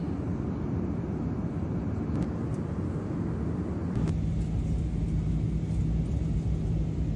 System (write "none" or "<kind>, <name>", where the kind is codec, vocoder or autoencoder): none